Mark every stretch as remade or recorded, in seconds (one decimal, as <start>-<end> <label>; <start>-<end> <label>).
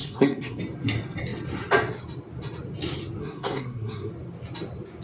0.0-0.6 remade; 0.6-3.2 recorded; 3.2-4.1 remade; 4.1-5.0 recorded